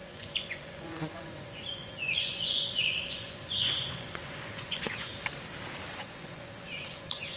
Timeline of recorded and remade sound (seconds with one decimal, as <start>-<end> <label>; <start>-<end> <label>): 0.0-5.1 remade; 5.1-5.9 recorded; 5.9-7.4 remade